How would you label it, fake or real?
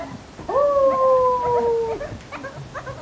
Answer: real